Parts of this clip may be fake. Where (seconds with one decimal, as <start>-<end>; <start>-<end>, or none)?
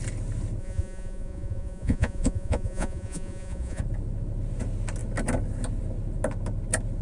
0.6-3.8